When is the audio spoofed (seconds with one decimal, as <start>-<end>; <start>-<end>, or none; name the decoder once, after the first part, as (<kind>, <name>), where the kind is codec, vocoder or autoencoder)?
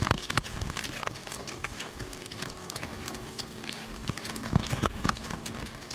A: 0.0-5.9 (codec, DAC)